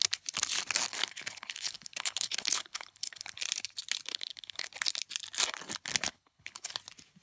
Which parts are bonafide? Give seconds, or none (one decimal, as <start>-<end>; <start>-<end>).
0.0-1.0; 3.4-4.1; 4.7-6.1; 6.7-7.2